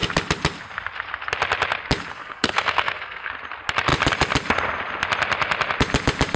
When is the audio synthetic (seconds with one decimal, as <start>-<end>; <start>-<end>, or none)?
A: 2.1-3.3